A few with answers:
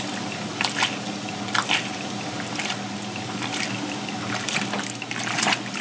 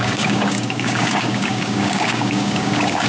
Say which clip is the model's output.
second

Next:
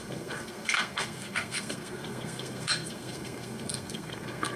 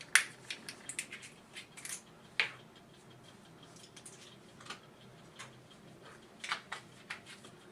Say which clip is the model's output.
first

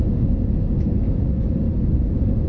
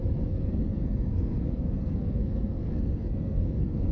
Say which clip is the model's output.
second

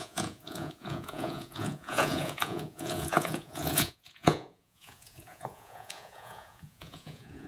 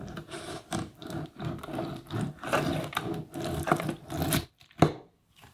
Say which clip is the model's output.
first